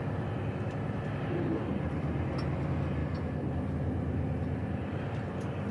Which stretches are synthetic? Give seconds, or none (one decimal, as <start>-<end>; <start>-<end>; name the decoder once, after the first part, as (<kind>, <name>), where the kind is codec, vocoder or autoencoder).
none